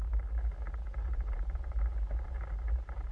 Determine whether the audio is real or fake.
real